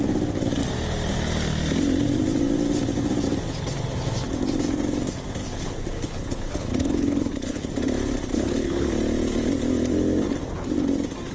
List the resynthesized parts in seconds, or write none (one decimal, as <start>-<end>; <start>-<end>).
5.4-7.7; 8.3-8.9